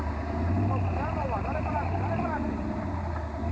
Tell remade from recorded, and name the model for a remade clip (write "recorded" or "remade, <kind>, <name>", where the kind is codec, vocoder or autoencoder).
recorded